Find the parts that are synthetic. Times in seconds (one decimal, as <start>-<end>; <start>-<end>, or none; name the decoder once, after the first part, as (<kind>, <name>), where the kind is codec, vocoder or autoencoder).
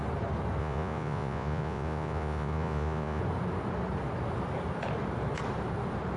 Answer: 0.6-3.2 (vocoder, Vocos)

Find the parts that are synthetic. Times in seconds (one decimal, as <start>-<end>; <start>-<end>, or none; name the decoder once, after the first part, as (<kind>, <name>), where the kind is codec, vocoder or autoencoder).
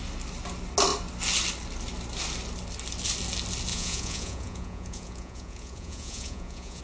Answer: 3.7-6.8 (vocoder, Vocos)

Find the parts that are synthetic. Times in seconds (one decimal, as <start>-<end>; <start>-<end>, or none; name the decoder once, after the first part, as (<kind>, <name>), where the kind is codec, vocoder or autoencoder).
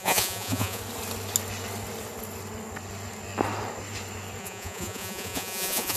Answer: 0.0-0.8 (vocoder, Vocos); 4.4-6.0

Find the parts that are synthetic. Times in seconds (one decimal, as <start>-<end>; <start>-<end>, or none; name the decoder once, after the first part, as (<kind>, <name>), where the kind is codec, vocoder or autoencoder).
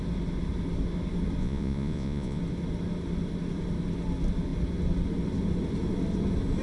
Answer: 1.4-2.4 (vocoder, Vocos)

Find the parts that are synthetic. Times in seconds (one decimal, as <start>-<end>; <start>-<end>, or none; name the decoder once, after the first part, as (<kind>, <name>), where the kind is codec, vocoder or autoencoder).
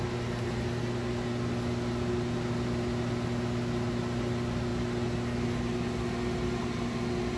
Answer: none